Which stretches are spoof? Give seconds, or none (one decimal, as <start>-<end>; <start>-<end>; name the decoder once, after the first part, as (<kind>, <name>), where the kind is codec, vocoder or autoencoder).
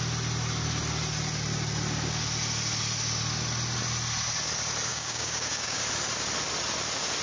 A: 4.9-5.8 (codec, DAC)